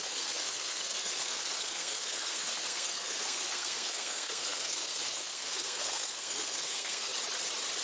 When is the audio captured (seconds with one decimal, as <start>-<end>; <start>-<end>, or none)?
7.1-7.8